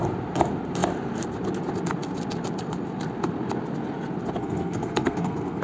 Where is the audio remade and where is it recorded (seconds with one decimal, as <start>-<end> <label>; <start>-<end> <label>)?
0.0-4.4 recorded; 4.4-5.6 remade